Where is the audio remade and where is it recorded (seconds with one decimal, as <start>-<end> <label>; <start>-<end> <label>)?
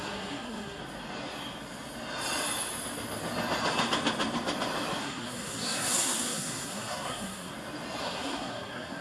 0.0-0.8 remade; 0.8-5.0 recorded; 5.0-7.5 remade; 7.5-8.0 recorded; 8.0-9.0 remade